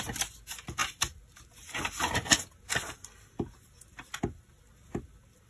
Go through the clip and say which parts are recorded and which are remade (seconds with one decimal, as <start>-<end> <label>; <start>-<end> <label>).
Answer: 0.0-5.5 recorded